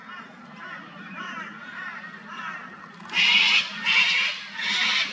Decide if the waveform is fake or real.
real